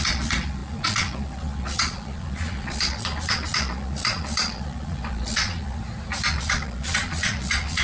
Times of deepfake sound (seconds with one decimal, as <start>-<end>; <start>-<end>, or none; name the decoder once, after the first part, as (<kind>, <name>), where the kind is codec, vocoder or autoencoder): 0.0-5.8 (vocoder, Vocos); 6.3-7.8